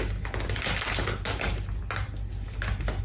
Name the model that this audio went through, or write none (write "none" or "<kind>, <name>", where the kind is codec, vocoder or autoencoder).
none